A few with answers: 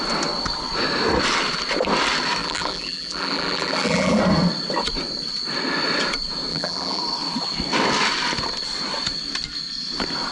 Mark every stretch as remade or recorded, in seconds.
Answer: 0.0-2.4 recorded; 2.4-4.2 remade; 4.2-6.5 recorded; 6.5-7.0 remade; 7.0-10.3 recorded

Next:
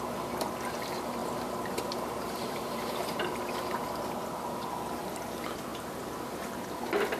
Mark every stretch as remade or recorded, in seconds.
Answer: 0.0-1.2 recorded; 1.2-3.2 remade; 3.2-5.7 recorded; 5.7-6.2 remade; 6.2-7.2 recorded